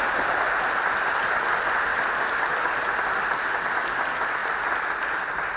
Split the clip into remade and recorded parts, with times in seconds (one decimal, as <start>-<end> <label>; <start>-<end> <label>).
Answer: 0.0-5.6 recorded